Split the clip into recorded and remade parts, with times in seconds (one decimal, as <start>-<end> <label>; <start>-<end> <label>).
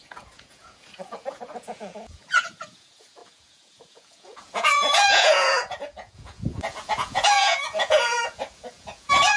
0.0-9.4 remade